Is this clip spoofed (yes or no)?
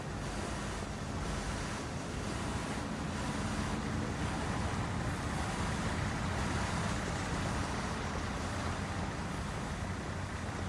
no